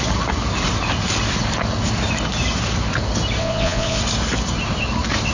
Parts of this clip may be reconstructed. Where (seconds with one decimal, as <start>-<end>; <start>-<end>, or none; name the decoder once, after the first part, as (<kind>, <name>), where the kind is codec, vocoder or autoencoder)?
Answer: 3.4-4.0 (vocoder, Vocos)